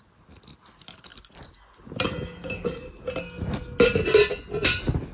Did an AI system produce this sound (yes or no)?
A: no